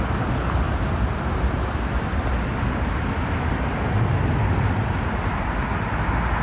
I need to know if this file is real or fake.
real